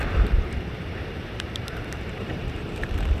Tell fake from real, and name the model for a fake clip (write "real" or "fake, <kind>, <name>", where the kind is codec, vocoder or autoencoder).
fake, vocoder, BigVGAN v2